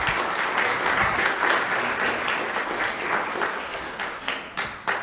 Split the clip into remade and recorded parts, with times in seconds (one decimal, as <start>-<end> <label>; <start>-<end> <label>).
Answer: 0.0-0.9 recorded; 0.9-1.4 remade; 1.4-3.5 recorded; 3.5-4.0 remade; 4.0-5.0 recorded